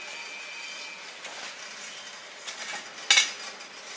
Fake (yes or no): no